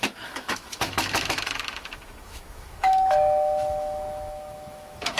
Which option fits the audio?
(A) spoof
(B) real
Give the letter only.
A